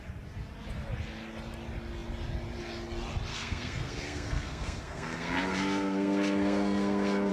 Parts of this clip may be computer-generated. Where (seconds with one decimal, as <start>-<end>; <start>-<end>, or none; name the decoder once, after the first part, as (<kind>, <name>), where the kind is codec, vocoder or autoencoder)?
3.3-7.3 (codec, SNAC)